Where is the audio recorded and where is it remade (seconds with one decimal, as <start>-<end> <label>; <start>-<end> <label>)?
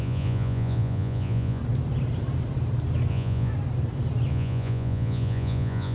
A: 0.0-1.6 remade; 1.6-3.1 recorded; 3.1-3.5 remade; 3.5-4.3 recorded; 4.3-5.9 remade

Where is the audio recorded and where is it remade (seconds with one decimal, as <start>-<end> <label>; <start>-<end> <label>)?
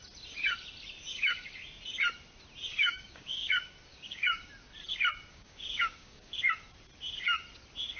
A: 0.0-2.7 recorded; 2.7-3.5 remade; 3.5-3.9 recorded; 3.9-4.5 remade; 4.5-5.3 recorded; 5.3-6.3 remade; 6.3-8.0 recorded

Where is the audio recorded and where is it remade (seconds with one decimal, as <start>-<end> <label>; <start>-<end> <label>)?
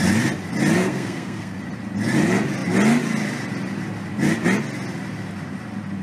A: 0.0-0.8 recorded; 0.8-1.6 remade; 1.6-6.0 recorded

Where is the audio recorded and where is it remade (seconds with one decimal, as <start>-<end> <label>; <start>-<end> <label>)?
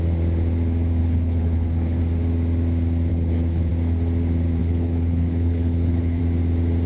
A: 0.0-1.0 recorded; 1.0-2.0 remade; 2.0-3.1 recorded; 3.1-3.7 remade; 3.7-4.6 recorded; 4.6-6.2 remade; 6.2-6.9 recorded